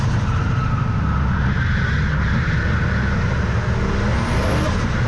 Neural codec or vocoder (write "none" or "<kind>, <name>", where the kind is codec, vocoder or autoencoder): none